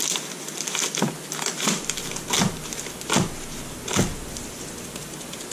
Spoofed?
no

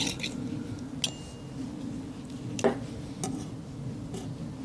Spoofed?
no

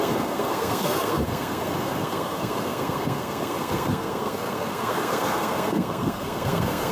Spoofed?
yes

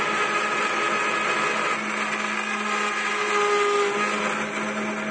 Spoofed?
no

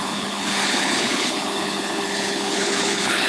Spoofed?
yes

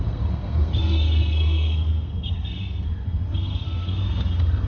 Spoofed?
yes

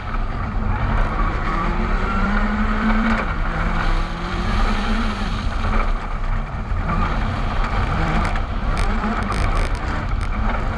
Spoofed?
yes